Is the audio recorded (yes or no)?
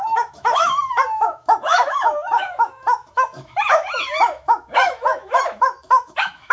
no